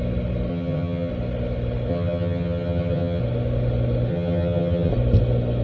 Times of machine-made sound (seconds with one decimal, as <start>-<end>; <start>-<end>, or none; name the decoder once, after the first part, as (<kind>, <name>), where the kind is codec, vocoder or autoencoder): 0.5-1.1 (vocoder, HiFi-GAN); 1.9-3.2; 4.1-4.9